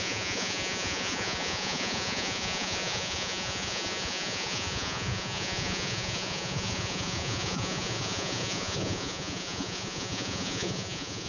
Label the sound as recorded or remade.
remade